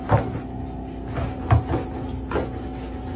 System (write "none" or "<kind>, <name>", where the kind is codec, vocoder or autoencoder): none